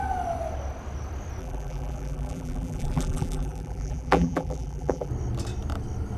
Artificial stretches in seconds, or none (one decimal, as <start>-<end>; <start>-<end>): 1.4-5.1

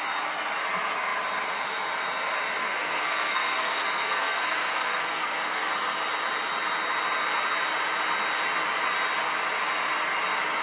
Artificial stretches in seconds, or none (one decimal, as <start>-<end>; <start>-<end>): 2.6-5.7

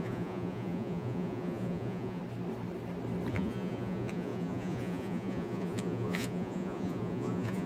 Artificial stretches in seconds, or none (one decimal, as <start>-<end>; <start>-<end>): 0.0-2.2; 3.3-7.7

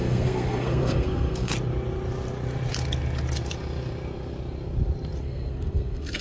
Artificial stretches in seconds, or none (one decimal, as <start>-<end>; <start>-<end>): 0.0-1.5; 5.2-6.2

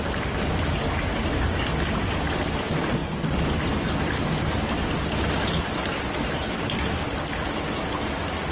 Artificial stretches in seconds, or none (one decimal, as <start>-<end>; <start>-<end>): none